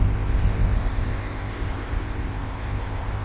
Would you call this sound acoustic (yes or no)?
no